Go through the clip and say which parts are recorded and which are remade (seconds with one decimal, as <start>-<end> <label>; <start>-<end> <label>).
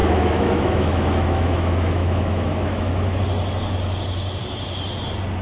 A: 0.0-3.2 remade; 3.2-5.4 recorded